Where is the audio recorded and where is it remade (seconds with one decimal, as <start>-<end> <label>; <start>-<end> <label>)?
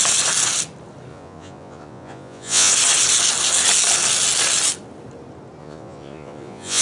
0.0-1.1 recorded; 1.1-2.7 remade; 2.7-5.6 recorded; 5.6-6.8 remade